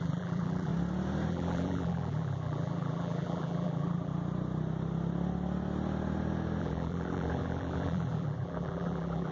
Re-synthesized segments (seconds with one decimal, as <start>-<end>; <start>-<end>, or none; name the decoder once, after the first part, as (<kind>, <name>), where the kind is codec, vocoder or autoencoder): 0.0-0.7 (vocoder, BigVGAN v2); 1.3-4.1; 6.6-9.3